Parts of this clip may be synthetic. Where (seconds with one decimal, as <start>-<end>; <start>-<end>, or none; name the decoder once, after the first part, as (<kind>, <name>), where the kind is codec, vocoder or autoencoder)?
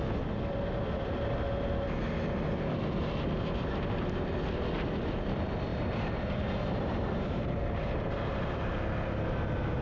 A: 5.7-8.8 (vocoder, BigVGAN v2)